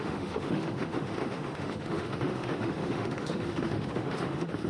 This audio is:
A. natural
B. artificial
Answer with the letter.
B